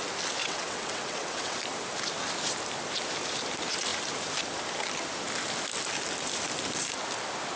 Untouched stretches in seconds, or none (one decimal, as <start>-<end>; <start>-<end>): 0.0-0.4; 1.5-7.6